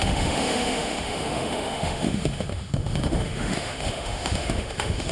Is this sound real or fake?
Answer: fake